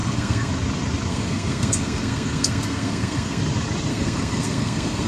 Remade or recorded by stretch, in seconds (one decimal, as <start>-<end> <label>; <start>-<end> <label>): 0.0-0.5 remade; 0.5-1.1 recorded; 1.1-3.4 remade; 3.4-3.9 recorded; 3.9-5.1 remade